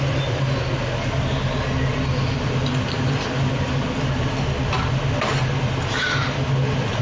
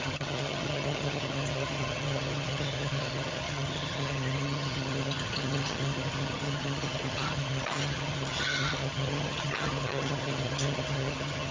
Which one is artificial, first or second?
second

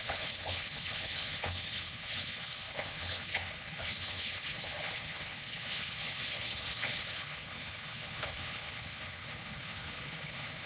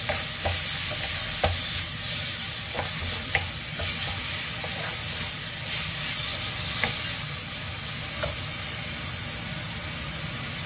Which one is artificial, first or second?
first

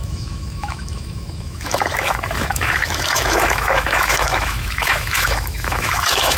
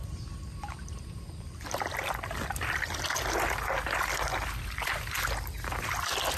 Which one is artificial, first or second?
first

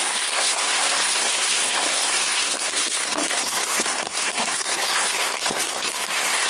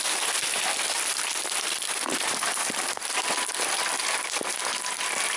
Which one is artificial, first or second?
first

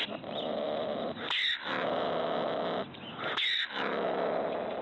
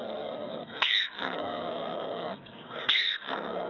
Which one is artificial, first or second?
second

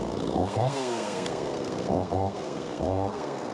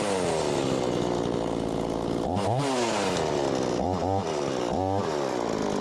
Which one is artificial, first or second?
first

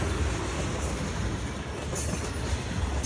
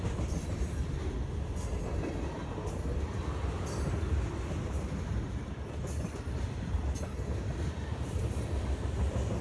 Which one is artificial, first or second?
second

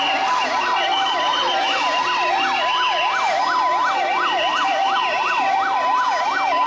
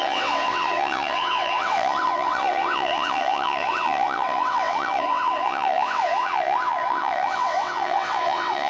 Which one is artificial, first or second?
second